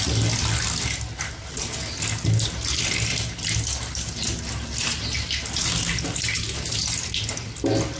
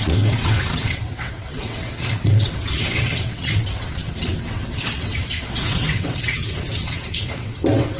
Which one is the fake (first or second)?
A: second